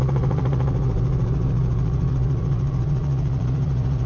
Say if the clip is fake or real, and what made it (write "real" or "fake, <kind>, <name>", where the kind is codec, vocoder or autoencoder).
fake, vocoder, Vocos